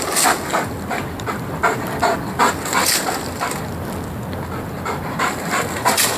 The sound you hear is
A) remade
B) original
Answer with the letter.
B